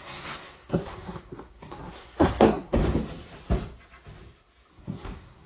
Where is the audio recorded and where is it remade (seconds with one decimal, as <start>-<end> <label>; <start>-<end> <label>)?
0.0-2.8 remade; 2.8-4.7 recorded; 4.7-5.5 remade